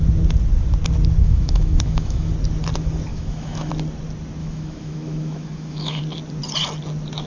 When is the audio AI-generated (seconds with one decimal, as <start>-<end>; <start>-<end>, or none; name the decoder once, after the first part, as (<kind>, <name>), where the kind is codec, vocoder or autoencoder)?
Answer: 1.2-2.3 (autoencoder, DAC-VAE); 3.1-3.7; 4.4-6.0